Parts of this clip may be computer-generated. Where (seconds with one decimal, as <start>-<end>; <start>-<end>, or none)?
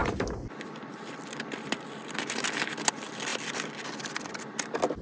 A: 0.0-5.0